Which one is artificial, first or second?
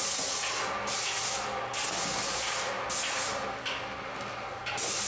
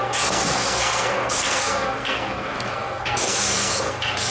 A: second